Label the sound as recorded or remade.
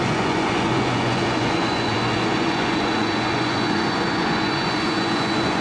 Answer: remade